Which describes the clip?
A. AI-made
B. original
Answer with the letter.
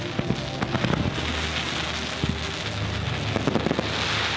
B